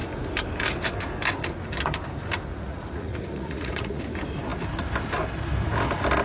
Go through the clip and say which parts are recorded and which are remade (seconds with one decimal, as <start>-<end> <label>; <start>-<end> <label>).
0.0-2.5 recorded; 2.5-4.0 remade; 4.0-6.2 recorded